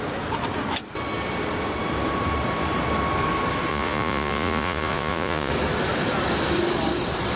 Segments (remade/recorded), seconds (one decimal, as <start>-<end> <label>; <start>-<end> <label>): 0.0-3.7 recorded; 3.7-5.5 remade; 5.5-7.4 recorded